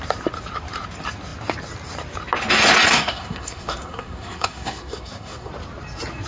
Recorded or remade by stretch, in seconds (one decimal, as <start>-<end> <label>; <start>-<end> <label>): 0.0-2.9 recorded; 2.9-5.5 remade; 5.5-6.3 recorded